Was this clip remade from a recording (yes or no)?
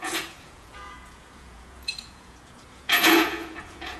yes